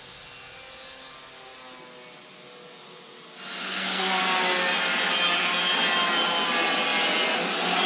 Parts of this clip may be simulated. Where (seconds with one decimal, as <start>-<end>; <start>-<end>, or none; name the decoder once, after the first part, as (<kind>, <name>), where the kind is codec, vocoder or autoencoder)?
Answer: 3.6-4.2 (codec, SNAC)